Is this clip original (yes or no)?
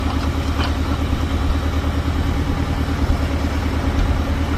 yes